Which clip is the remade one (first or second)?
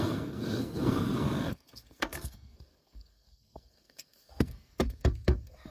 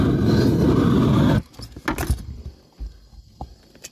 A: first